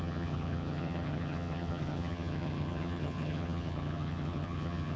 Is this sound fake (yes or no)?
yes